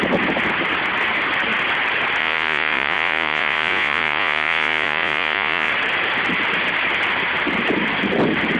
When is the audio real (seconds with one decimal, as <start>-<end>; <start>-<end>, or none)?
0.0-2.2; 5.7-8.6